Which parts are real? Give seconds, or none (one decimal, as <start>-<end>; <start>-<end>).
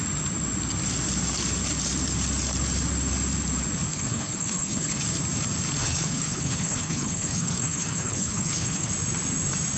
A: 0.0-3.9; 5.0-5.8; 8.9-9.8